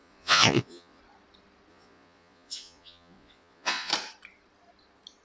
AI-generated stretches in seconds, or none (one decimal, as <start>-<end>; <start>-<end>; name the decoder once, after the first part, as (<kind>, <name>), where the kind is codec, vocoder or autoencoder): 0.0-1.0 (vocoder, Vocos); 1.7-3.9